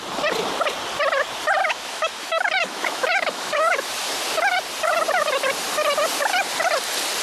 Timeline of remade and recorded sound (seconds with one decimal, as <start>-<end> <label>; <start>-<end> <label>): 0.0-1.6 recorded; 1.6-3.9 remade; 3.9-7.2 recorded